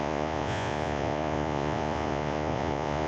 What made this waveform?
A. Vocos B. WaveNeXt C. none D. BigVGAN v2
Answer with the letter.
A